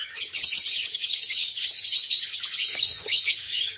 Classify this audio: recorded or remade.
remade